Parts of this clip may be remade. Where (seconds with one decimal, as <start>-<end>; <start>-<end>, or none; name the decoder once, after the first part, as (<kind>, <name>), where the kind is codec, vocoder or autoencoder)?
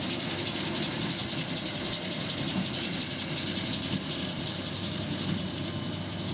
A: none